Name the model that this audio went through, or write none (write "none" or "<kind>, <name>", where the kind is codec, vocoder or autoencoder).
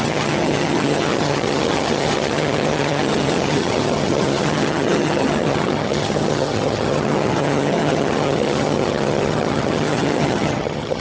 vocoder, HiFi-GAN